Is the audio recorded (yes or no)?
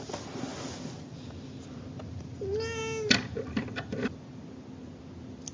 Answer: yes